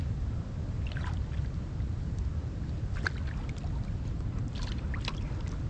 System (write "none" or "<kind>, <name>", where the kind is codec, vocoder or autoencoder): none